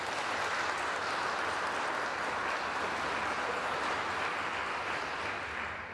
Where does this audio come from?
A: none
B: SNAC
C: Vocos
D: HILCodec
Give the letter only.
A